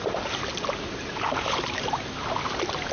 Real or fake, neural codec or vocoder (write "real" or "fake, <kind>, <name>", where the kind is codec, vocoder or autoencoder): real